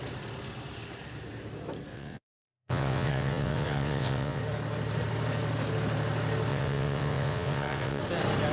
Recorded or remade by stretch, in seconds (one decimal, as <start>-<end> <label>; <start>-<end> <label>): 0.0-1.9 recorded; 1.9-4.4 remade; 4.4-6.5 recorded; 6.5-8.0 remade; 8.0-8.5 recorded

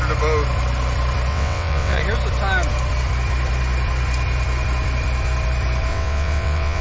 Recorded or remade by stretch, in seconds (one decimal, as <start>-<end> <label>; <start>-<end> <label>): 0.0-1.3 recorded; 1.3-2.0 remade; 2.0-5.9 recorded; 5.9-6.8 remade

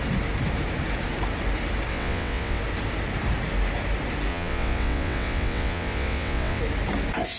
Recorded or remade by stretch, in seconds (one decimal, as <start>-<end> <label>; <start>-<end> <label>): 0.0-1.9 recorded; 1.9-2.6 remade; 2.6-4.3 recorded; 4.3-6.6 remade; 6.6-7.4 recorded